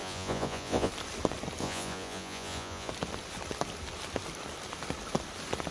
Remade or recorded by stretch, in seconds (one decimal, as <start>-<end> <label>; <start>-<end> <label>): 0.0-0.9 remade; 0.9-1.6 recorded; 1.6-2.9 remade; 2.9-5.7 recorded